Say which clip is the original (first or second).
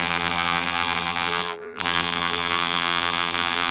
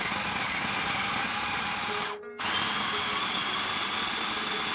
second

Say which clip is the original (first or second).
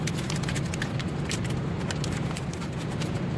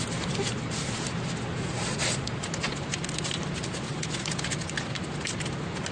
second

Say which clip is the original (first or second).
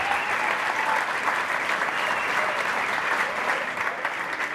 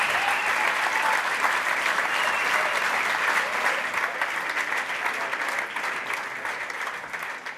second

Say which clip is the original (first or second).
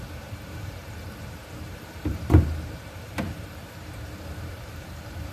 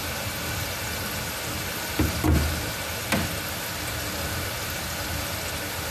second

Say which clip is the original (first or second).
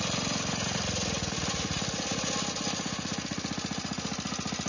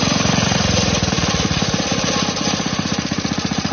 first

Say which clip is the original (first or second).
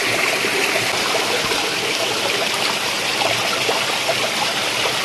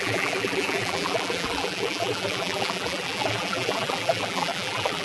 first